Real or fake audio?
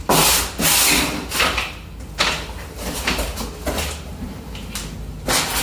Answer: real